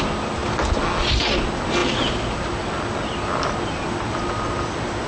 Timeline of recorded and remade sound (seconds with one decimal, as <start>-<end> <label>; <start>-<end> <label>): 0.0-5.1 recorded